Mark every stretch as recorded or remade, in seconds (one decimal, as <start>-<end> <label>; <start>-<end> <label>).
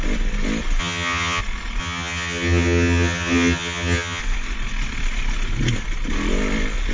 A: 0.0-0.8 recorded; 0.8-1.4 remade; 1.4-1.8 recorded; 1.8-4.2 remade; 4.2-6.9 recorded